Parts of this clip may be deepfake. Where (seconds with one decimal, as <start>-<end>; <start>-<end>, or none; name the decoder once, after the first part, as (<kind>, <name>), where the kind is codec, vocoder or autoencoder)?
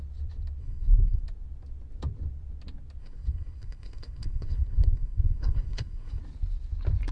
0.6-1.2 (codec, SNAC); 3.0-6.2